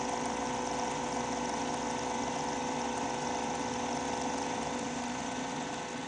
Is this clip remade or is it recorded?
recorded